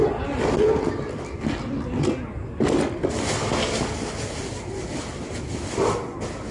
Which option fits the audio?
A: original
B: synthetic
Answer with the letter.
A